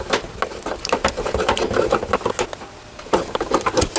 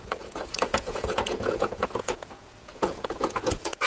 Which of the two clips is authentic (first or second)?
first